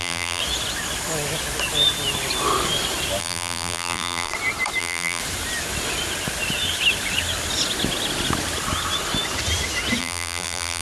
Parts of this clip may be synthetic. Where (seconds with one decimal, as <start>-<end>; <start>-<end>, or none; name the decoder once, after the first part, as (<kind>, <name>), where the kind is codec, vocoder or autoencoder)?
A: 0.0-0.4 (vocoder, BigVGAN v2); 3.2-4.3; 4.8-5.2; 10.0-10.8

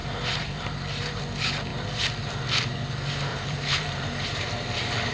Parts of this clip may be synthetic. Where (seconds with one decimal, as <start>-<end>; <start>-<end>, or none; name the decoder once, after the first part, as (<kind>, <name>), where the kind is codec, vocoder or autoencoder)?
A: 0.0-1.2 (vocoder, BigVGAN v2); 3.3-4.5

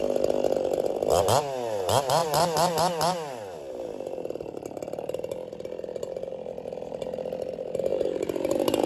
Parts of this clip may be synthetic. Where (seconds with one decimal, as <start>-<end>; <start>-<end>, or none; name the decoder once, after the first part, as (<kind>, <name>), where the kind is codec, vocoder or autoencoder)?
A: 7.9-8.9 (vocoder, BigVGAN v2)

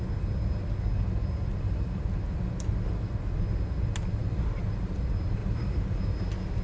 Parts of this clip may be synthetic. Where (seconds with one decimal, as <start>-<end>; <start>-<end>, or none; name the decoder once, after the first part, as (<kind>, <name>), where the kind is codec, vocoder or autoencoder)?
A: 1.5-3.1 (vocoder, BigVGAN v2); 5.4-6.0

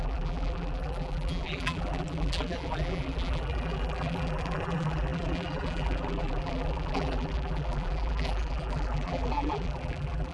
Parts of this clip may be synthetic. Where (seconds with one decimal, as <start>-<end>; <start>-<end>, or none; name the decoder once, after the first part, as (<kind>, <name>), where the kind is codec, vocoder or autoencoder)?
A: 0.0-10.3 (vocoder, BigVGAN v2)